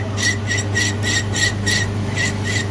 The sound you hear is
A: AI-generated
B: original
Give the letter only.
B